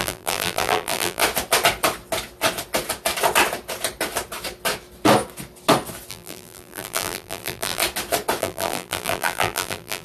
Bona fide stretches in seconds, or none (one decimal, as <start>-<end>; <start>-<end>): 1.2-6.1; 7.8-8.4